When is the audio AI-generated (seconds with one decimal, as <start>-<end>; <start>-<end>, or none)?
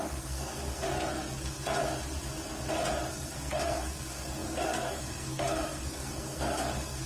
0.0-1.8; 3.1-7.1